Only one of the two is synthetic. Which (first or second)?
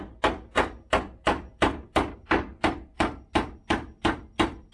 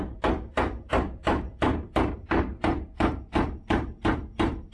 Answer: second